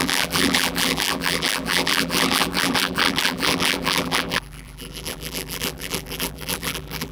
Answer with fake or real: fake